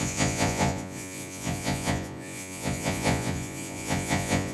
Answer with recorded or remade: remade